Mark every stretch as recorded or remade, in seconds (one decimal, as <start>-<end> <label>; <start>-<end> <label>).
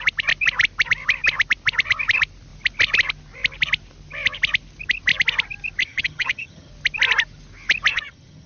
0.0-5.8 recorded; 5.8-6.7 remade; 6.7-7.9 recorded; 7.9-8.5 remade